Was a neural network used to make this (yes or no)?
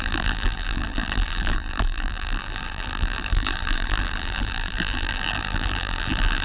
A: yes